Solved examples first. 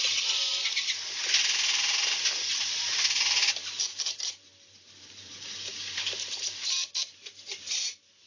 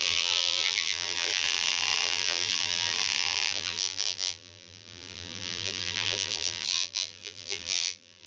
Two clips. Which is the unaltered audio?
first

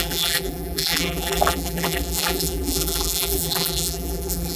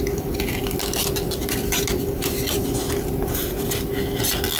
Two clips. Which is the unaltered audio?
second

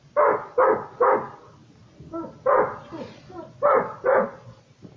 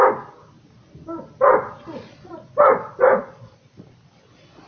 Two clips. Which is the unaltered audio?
first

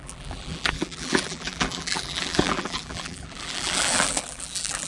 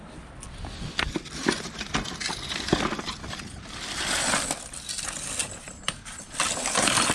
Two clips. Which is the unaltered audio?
second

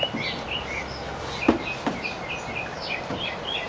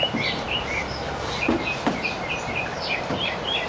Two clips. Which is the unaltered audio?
first